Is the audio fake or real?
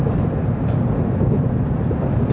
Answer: real